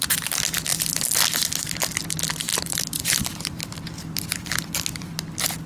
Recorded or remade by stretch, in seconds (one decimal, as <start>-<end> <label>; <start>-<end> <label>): 0.0-2.5 recorded; 2.5-3.7 remade; 3.7-5.7 recorded